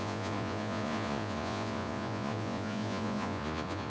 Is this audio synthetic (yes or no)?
yes